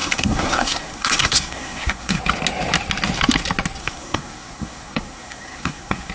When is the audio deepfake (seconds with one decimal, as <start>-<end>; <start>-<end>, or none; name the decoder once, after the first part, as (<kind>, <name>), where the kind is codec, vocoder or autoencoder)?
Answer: 0.0-2.2 (codec, SNAC); 3.8-6.1